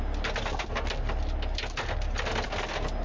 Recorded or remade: recorded